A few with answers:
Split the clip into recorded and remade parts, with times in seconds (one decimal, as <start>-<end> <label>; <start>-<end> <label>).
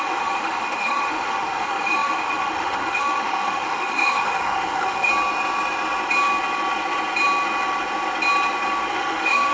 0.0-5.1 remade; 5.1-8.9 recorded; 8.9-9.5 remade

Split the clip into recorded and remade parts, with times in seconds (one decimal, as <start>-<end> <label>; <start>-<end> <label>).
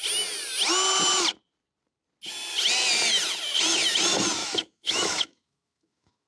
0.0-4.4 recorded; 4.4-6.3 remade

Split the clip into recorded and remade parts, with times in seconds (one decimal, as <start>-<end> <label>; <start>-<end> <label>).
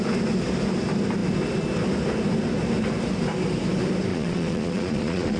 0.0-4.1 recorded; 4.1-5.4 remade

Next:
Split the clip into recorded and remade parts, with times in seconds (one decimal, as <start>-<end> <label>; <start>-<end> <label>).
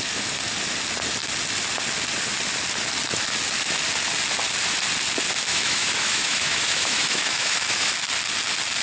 0.0-5.5 recorded; 5.5-7.9 remade; 7.9-8.8 recorded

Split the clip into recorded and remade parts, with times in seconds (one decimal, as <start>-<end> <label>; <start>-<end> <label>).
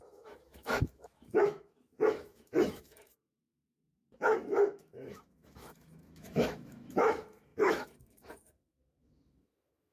0.0-9.9 remade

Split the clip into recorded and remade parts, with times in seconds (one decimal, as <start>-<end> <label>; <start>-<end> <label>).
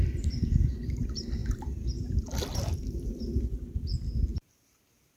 0.0-5.2 recorded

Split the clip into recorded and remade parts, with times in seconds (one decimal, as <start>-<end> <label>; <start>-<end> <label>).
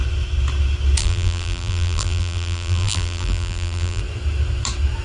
0.0-1.0 recorded; 1.0-4.0 remade; 4.0-5.0 recorded